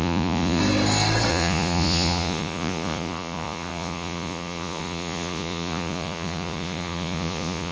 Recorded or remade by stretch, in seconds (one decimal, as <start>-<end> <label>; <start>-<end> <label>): 0.0-0.6 remade; 0.6-1.3 recorded; 1.3-7.7 remade